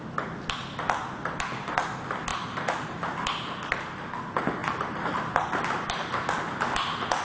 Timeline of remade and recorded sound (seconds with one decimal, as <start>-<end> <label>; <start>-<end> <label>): 0.0-2.3 recorded; 2.3-3.6 remade; 3.6-4.6 recorded; 4.6-6.0 remade; 6.0-7.2 recorded